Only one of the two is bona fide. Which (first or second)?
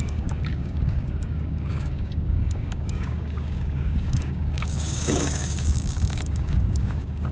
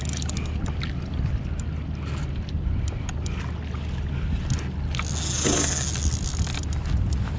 second